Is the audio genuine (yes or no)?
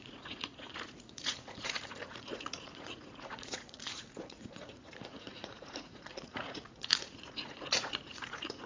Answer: no